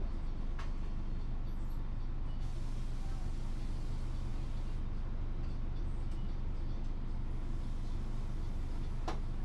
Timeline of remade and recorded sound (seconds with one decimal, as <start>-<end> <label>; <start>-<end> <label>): 0.0-9.4 recorded